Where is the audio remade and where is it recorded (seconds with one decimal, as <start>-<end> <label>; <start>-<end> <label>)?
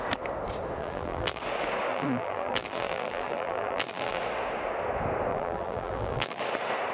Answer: 0.0-0.8 recorded; 0.8-1.4 remade; 1.4-1.9 recorded; 1.9-4.2 remade; 4.2-5.3 recorded; 5.3-6.4 remade; 6.4-6.9 recorded